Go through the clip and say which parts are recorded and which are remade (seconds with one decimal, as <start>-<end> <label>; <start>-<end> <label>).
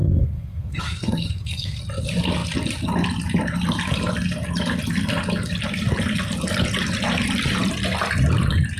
0.0-1.8 remade; 1.8-8.8 recorded